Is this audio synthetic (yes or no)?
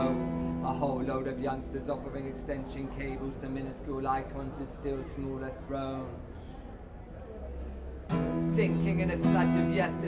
no